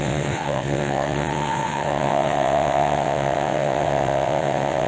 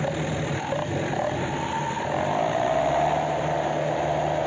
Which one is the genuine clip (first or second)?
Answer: second